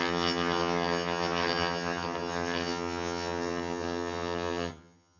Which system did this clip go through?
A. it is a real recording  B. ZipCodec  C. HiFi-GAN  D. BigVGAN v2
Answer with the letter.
C